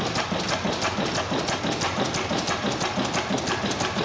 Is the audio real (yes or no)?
yes